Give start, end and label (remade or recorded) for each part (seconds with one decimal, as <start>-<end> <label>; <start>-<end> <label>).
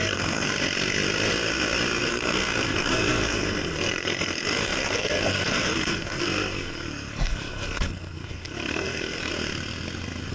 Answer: 0.0-0.5 remade; 0.5-2.0 recorded; 2.0-9.3 remade; 9.3-10.3 recorded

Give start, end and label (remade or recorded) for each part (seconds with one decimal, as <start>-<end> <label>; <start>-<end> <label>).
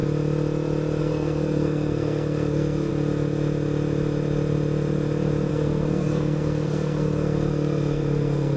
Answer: 0.0-1.0 recorded; 1.0-2.9 remade; 2.9-5.5 recorded; 5.5-8.6 remade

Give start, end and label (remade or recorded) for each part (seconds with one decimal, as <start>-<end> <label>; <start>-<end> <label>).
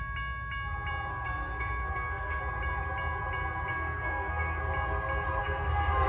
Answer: 0.0-1.1 recorded; 1.1-2.4 remade; 2.4-3.7 recorded; 3.7-4.6 remade; 4.6-5.4 recorded; 5.4-6.1 remade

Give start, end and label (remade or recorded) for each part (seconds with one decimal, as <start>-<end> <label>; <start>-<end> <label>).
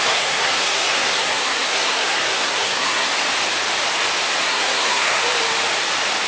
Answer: 0.0-3.1 remade; 3.1-4.4 recorded; 4.4-5.2 remade; 5.2-6.3 recorded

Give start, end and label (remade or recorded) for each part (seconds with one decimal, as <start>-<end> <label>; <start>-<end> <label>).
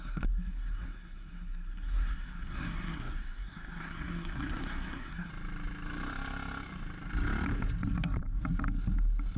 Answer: 0.0-5.3 remade; 5.3-9.4 recorded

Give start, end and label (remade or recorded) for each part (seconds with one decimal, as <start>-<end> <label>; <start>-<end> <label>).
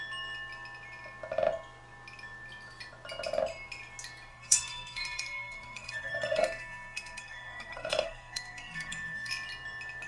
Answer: 0.0-4.3 recorded; 4.3-9.3 remade; 9.3-10.1 recorded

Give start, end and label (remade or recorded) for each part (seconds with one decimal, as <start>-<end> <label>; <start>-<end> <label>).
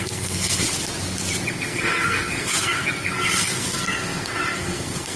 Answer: 0.0-0.6 remade; 0.6-1.5 recorded; 1.5-5.2 remade